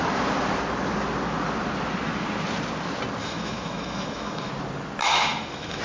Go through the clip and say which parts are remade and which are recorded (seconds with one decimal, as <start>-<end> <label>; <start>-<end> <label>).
0.0-3.2 recorded; 3.2-4.5 remade; 4.5-5.0 recorded; 5.0-5.8 remade